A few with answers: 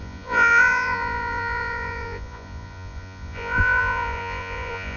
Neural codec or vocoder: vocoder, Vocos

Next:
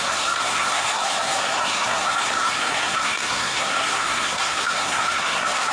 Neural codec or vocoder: codec, SNAC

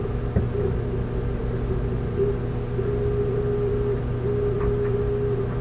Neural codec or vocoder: none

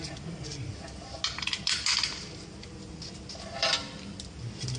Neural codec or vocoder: none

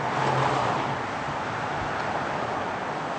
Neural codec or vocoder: none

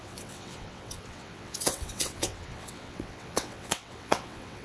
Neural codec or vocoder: vocoder, WaveNeXt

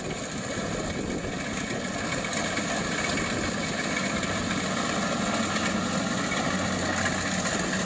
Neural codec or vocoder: none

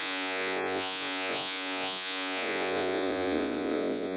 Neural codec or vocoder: vocoder, Vocos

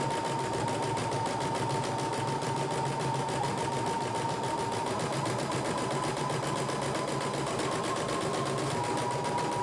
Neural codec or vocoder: none